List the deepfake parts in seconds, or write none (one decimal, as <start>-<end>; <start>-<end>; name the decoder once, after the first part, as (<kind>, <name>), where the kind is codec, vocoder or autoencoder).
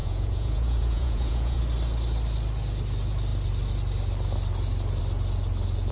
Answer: 0.0-1.6 (vocoder, Vocos)